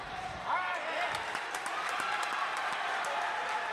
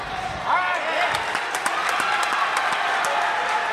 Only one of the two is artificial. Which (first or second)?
first